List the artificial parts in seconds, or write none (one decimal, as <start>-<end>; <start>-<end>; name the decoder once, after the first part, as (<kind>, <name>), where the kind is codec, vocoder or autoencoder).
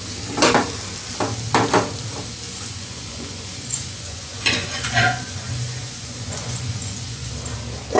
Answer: 2.5-7.3 (vocoder, Vocos)